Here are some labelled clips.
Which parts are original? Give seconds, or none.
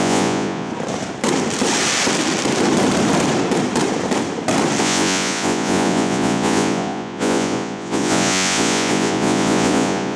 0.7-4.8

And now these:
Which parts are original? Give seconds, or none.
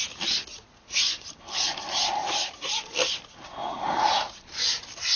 0.0-0.5; 1.3-2.2; 2.7-3.6; 4.4-5.2